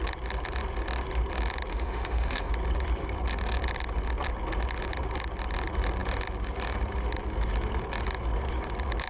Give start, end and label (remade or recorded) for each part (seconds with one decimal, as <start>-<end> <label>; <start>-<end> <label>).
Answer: 0.0-1.7 recorded; 1.7-2.5 remade; 2.5-9.1 recorded